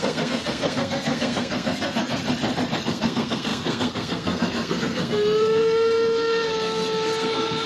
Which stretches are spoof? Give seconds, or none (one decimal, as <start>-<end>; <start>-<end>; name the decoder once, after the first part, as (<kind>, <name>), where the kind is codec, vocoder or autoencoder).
0.0-2.2 (codec, SNAC); 2.9-7.7